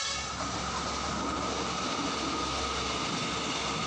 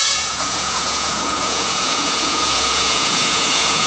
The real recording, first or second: first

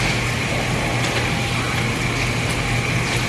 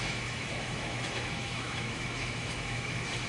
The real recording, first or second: first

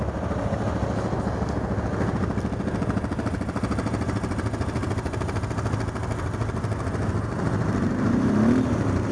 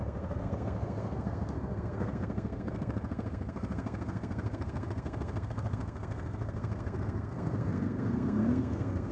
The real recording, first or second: first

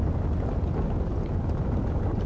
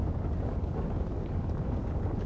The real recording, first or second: first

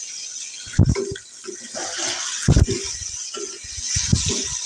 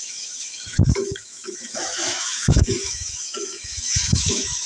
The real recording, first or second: first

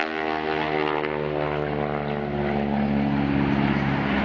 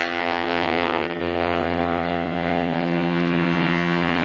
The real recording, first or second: first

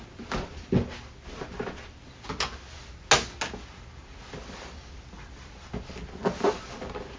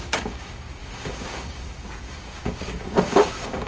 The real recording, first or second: first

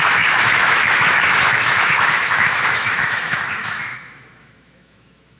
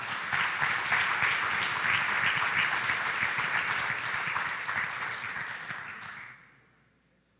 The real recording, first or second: second